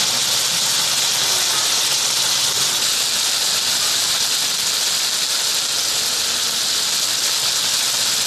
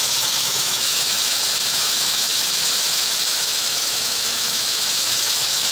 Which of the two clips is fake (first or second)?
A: second